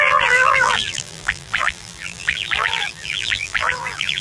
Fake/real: fake